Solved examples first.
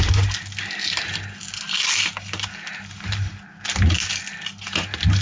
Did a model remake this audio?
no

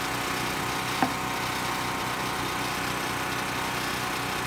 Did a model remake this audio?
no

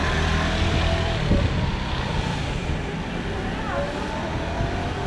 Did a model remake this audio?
no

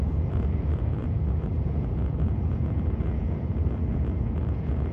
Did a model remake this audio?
yes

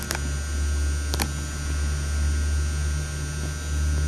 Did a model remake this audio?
no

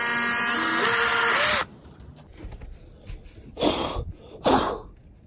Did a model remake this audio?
no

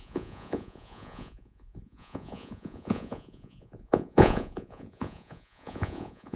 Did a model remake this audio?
yes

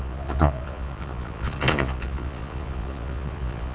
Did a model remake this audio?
yes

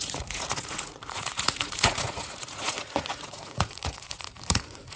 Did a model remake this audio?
yes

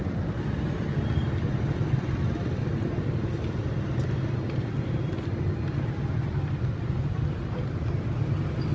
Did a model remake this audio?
no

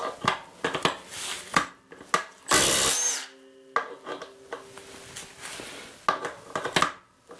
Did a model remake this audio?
no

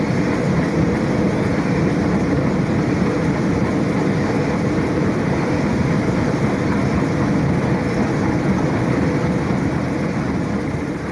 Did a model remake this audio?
no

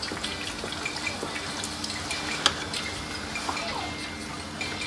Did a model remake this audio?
no